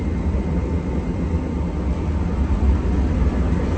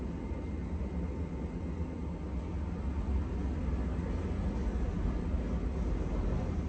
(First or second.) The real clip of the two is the second